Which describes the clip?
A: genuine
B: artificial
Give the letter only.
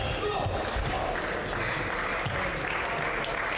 A